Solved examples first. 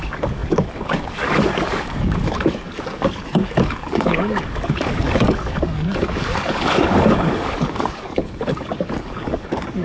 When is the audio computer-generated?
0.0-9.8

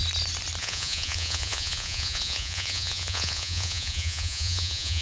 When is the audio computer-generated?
0.6-5.0

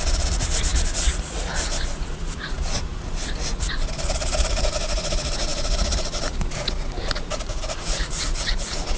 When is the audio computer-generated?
0.0-9.0